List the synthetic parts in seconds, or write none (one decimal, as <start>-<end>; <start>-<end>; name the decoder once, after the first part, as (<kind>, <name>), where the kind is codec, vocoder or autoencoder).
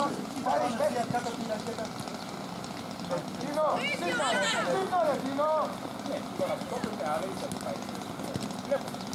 none